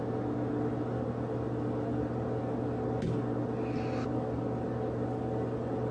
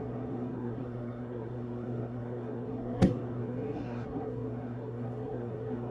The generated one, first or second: second